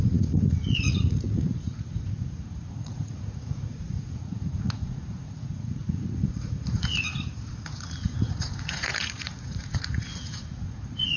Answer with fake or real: fake